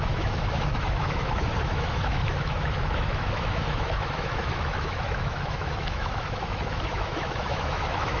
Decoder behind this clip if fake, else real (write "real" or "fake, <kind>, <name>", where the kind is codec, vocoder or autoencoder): fake, autoencoder, DAC-VAE